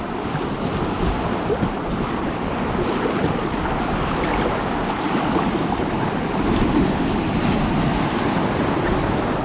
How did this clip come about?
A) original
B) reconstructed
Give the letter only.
A